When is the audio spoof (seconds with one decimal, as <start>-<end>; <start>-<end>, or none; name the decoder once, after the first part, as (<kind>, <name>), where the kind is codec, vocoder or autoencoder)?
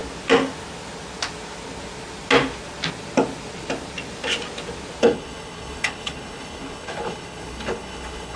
5.0-8.4 (codec, HILCodec)